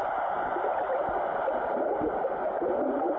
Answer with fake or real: real